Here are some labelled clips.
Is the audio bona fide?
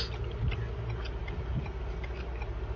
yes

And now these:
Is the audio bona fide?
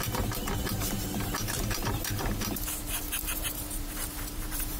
no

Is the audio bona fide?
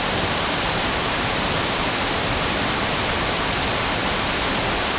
no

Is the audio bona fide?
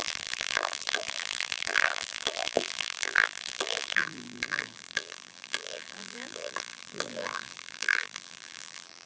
no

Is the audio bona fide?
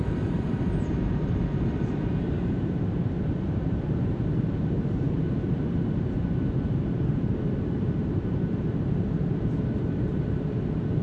no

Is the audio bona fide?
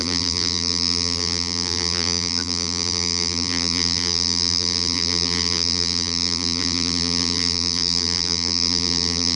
no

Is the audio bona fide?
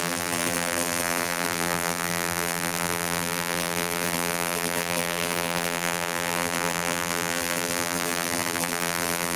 no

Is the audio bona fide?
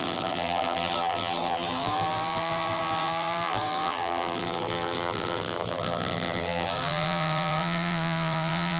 no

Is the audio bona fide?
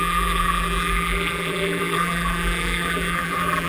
no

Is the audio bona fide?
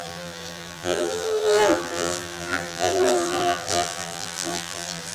no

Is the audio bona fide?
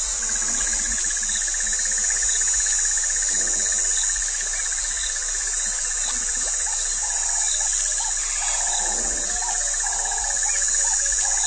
yes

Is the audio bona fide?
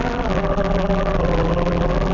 no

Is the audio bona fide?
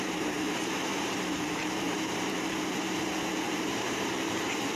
no